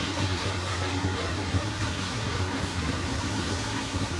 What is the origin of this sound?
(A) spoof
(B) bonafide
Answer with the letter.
A